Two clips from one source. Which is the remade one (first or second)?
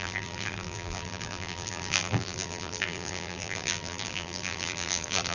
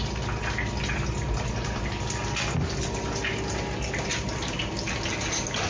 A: first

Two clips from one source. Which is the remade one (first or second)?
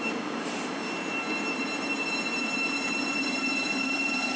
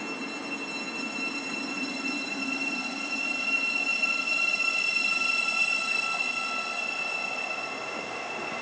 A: first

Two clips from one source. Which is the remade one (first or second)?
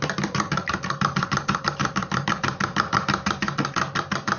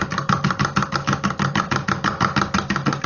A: first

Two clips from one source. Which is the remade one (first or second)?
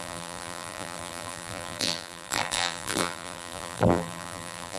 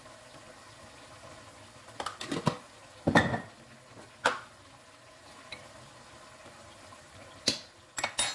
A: first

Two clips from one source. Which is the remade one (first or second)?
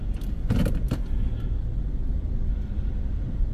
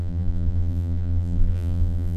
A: second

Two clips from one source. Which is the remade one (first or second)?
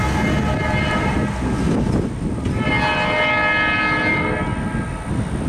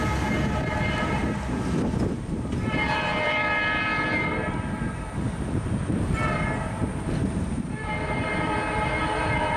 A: second